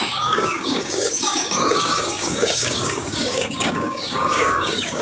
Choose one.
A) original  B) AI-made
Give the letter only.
B